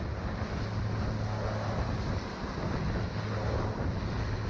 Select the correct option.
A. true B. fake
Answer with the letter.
A